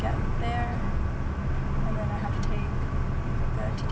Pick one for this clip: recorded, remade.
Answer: recorded